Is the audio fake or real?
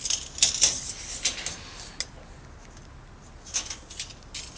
real